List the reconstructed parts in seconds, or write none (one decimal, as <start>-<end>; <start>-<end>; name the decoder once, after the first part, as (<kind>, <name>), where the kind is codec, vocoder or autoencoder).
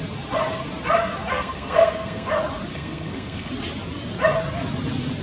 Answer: 1.3-2.3 (codec, SNAC); 2.7-3.5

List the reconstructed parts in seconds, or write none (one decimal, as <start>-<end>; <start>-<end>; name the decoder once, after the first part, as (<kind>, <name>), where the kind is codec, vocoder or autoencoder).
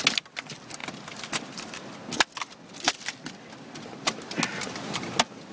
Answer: none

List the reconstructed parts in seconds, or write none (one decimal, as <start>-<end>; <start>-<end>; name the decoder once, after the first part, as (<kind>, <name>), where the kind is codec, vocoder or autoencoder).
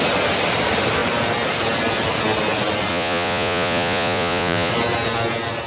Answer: 2.9-4.7 (vocoder, Vocos)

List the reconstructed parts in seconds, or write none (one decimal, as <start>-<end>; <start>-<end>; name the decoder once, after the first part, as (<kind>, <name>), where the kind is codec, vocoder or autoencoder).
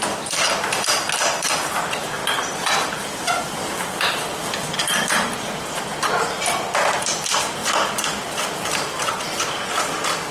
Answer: 2.2-3.4 (vocoder, BigVGAN v2)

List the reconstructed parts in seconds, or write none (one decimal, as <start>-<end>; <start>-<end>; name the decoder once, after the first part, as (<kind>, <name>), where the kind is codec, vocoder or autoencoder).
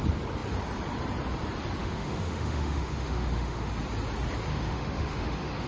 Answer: 1.8-3.7 (autoencoder, DAC-VAE); 4.5-5.7